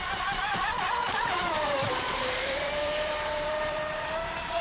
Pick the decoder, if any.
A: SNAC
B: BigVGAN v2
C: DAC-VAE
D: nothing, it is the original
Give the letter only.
B